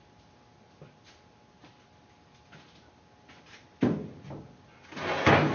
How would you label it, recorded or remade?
recorded